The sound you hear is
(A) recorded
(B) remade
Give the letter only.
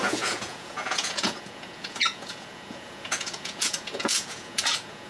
B